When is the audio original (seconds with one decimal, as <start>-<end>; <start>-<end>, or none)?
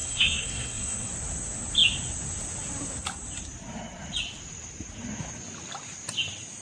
1.1-6.6